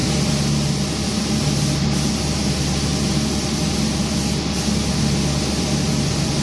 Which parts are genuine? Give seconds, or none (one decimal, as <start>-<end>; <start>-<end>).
0.0-6.4